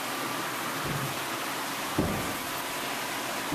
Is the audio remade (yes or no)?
no